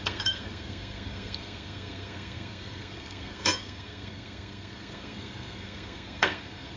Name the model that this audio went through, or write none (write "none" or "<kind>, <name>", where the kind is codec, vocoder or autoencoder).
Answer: codec, SNAC